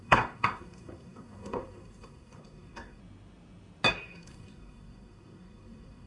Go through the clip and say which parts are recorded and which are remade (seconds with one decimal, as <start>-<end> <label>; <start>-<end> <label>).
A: 0.0-3.0 remade; 3.0-3.9 recorded; 3.9-6.1 remade